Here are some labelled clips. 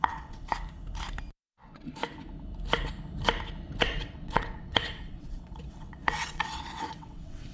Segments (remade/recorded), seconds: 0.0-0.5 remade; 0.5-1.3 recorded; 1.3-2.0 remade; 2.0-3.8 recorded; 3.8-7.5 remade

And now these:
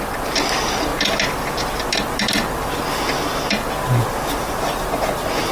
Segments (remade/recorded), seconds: 0.0-5.5 recorded

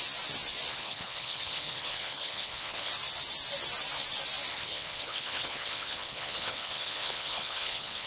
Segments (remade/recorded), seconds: 0.0-0.7 recorded; 0.7-2.9 remade; 2.9-4.5 recorded; 4.5-8.1 remade

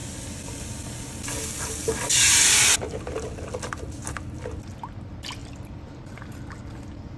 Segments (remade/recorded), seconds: 0.0-5.4 recorded; 5.4-5.9 remade; 5.9-7.2 recorded

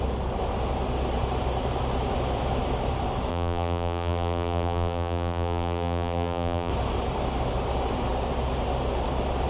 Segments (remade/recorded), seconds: 0.0-3.3 recorded; 3.3-6.7 remade; 6.7-9.5 recorded

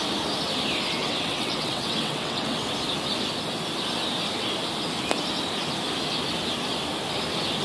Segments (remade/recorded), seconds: 0.0-1.0 recorded; 1.0-2.7 remade; 2.7-7.6 recorded

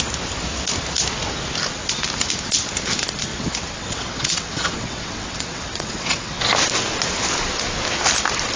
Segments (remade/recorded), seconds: 0.0-3.3 recorded; 3.3-6.4 remade; 6.4-8.6 recorded

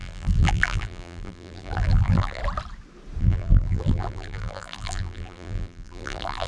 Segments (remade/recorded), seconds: 0.0-2.4 remade; 2.4-3.2 recorded; 3.2-6.5 remade